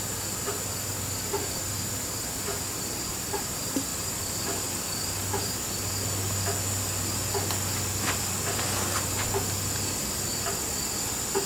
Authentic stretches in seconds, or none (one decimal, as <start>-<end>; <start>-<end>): 0.0-11.5